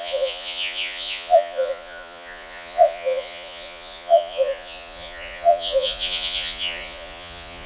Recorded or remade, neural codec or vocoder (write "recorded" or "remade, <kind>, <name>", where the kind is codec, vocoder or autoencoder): remade, vocoder, Vocos